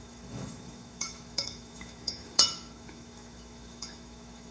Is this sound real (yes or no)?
no